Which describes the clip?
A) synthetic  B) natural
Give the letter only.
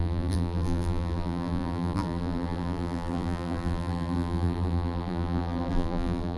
A